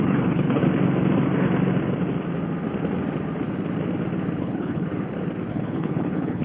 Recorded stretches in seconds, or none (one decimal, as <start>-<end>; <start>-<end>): 0.6-4.4; 4.9-5.5